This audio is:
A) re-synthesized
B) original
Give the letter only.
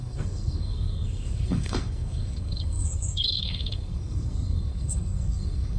A